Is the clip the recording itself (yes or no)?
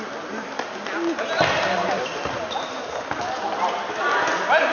yes